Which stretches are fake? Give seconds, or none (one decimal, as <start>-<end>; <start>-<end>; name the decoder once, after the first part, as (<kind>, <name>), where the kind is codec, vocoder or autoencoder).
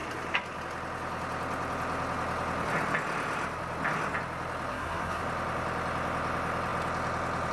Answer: 4.7-5.2 (codec, SNAC)